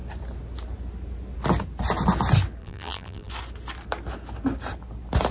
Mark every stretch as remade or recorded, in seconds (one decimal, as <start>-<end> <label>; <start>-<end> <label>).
0.0-2.6 recorded; 2.6-3.3 remade; 3.3-5.3 recorded